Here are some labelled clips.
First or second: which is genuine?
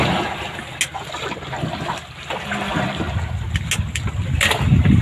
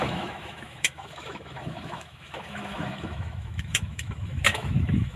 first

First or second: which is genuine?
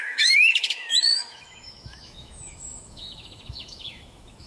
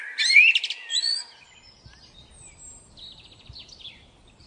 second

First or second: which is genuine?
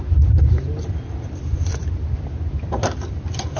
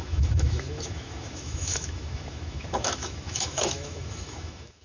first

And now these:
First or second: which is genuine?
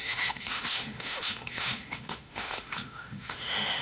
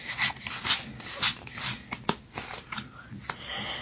second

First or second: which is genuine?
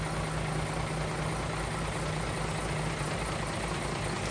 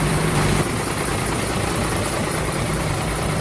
first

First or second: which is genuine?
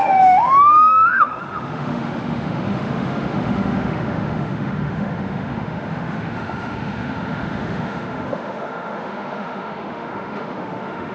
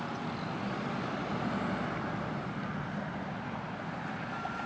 second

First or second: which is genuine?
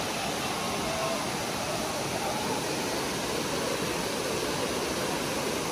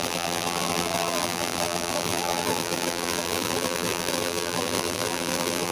first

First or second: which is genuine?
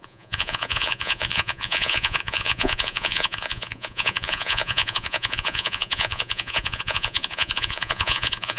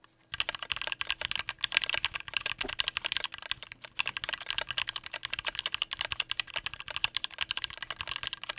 second